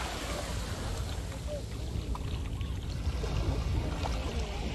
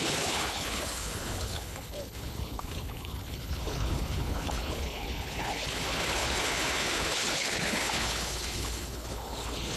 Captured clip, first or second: first